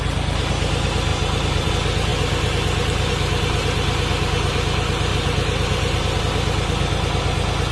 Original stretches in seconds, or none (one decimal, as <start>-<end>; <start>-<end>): 0.0-1.1; 1.7-7.7